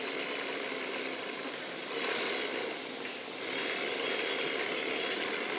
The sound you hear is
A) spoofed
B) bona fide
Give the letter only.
B